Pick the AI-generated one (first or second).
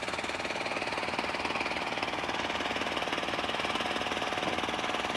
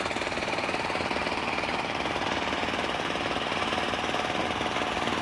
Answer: second